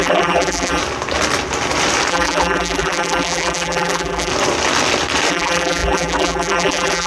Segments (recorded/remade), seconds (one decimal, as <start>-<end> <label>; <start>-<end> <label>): 0.0-0.8 remade; 0.8-2.1 recorded; 2.1-4.3 remade; 4.3-5.3 recorded; 5.3-7.1 remade